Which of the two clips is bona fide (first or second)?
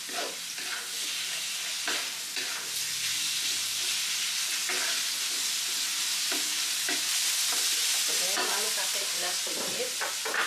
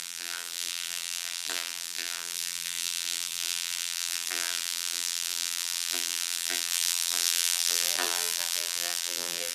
first